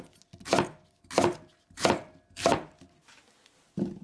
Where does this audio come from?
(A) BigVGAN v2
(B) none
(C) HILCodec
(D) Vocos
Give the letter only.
B